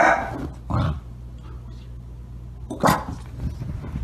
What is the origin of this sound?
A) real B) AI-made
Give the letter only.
A